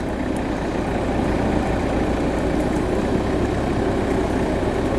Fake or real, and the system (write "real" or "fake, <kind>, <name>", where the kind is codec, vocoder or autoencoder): real